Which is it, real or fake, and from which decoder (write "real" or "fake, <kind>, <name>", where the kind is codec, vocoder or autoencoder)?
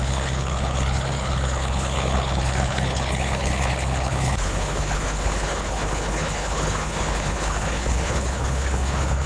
fake, codec, HILCodec